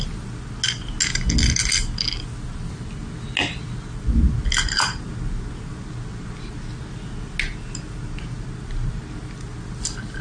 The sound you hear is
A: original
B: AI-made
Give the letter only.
A